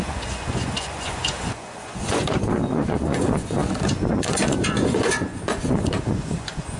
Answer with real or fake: fake